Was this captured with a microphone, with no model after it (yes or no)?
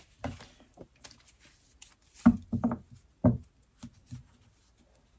yes